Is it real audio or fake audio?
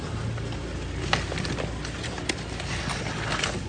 real